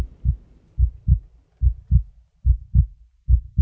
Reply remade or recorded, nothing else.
recorded